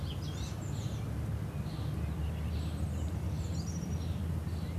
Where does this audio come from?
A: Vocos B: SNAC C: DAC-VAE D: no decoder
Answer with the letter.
D